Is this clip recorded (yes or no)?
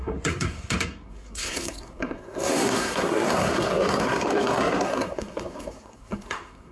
no